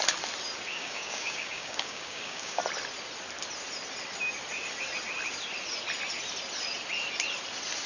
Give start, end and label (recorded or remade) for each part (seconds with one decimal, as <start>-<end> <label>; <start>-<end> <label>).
0.0-0.7 recorded; 0.7-2.6 remade; 2.6-7.9 recorded